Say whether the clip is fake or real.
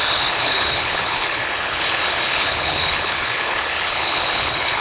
fake